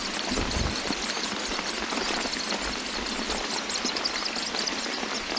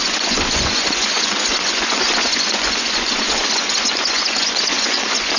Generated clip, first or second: second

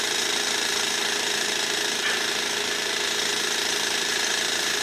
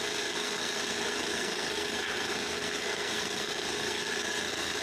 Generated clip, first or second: second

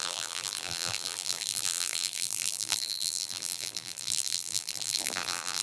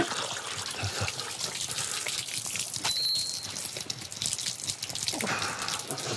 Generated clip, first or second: first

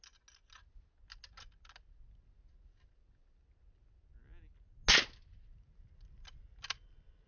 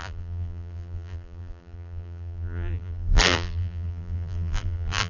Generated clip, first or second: second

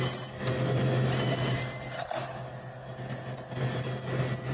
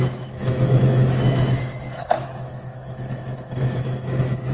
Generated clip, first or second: second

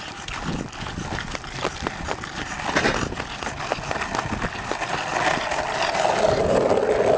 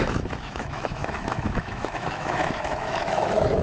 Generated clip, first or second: second